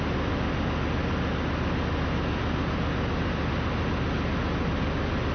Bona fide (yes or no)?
yes